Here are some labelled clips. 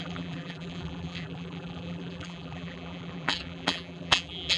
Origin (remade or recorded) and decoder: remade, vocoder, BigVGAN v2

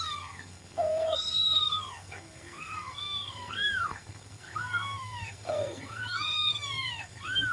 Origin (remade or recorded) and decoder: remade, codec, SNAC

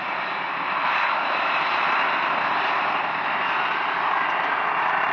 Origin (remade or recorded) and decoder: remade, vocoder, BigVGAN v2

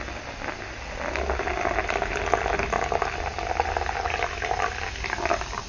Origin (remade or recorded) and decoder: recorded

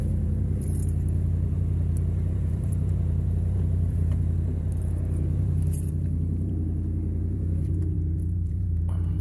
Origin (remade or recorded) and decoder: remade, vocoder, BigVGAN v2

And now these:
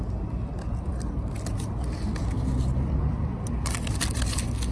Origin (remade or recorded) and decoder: recorded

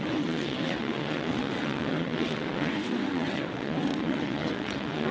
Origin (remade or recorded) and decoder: remade, vocoder, WaveNeXt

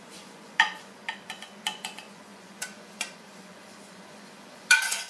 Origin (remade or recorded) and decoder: remade, vocoder, Vocos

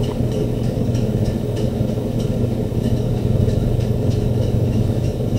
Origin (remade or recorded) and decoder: remade, codec, DAC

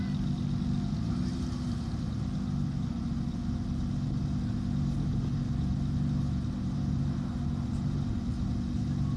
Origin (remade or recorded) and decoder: recorded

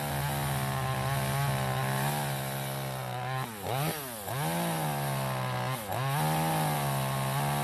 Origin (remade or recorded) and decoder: recorded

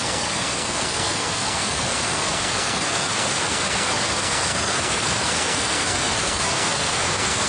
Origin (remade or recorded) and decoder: remade, codec, SNAC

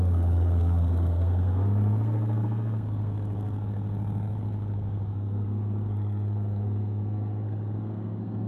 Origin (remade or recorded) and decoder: remade, codec, SNAC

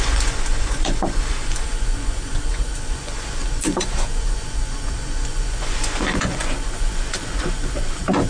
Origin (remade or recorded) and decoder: remade, vocoder, Vocos